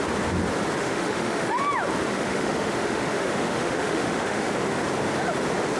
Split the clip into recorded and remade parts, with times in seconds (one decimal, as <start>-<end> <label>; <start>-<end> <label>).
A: 0.0-0.8 recorded; 0.8-1.6 remade; 1.6-2.1 recorded; 2.1-4.5 remade; 4.5-5.8 recorded